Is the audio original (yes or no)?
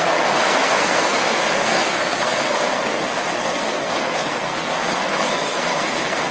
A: no